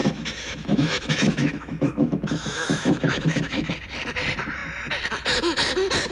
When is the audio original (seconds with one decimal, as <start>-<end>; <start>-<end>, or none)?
3.7-6.1